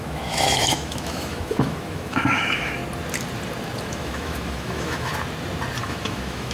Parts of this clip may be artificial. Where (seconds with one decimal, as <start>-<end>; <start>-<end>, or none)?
0.0-2.8; 3.8-5.1; 5.8-6.5